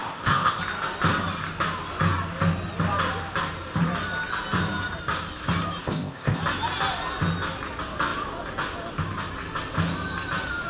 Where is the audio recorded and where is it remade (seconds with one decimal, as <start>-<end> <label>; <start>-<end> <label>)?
0.0-0.6 remade; 0.6-5.8 recorded; 5.8-6.4 remade; 6.4-10.7 recorded